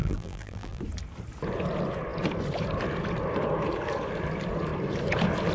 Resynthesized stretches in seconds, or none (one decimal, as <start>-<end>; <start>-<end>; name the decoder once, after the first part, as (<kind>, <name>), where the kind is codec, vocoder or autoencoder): 0.0-0.8 (vocoder, BigVGAN v2)